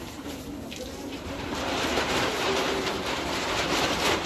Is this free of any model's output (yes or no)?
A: no